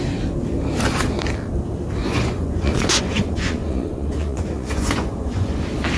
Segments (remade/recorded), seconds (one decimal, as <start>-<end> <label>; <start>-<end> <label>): 0.0-2.0 recorded; 2.0-5.6 remade; 5.6-6.0 recorded